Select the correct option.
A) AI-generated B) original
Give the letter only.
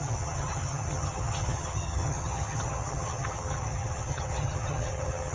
A